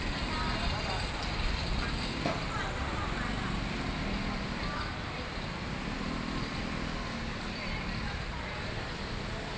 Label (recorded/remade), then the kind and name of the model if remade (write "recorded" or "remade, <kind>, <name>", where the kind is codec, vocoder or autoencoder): recorded